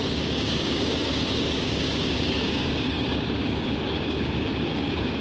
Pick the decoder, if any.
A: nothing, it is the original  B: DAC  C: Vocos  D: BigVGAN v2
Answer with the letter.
B